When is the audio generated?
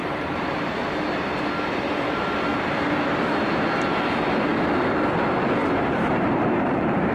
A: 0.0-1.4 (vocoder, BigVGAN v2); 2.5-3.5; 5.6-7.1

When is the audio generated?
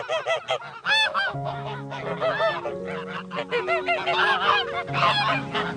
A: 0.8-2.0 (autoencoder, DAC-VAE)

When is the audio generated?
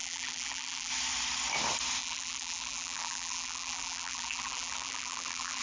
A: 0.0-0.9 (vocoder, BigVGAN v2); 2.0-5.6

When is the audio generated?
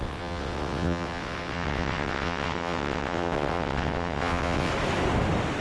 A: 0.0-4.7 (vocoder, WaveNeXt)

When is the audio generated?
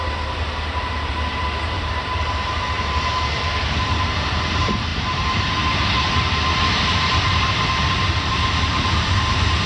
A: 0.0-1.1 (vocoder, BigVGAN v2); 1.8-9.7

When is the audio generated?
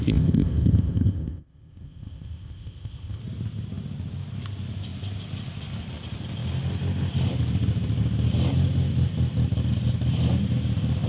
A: 0.0-3.2 (codec, ZipCodec)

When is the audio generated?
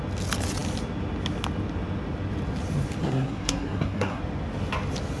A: 3.0-4.2 (codec, SNAC)